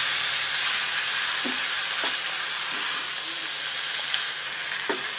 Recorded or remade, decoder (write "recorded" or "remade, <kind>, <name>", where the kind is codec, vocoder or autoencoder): recorded